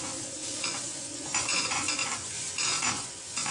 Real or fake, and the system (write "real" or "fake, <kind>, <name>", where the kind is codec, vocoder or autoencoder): fake, vocoder, Vocos